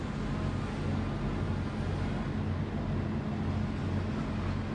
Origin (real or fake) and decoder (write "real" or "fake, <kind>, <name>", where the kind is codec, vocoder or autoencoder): real